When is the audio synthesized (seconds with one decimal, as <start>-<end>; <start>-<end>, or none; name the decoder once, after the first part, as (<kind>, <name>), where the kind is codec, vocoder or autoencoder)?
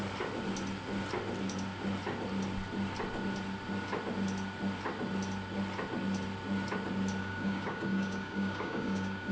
7.2-9.3 (codec, DAC)